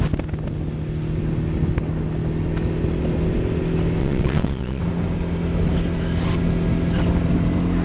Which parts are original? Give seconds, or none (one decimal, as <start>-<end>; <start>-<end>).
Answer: 0.0-4.0; 4.8-7.8